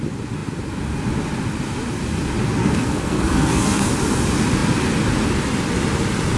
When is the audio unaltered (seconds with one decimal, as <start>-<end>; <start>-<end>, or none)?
0.0-2.6; 3.9-6.4